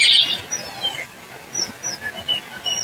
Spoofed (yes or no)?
no